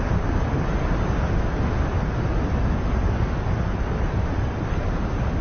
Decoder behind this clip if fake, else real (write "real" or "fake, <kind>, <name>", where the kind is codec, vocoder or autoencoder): real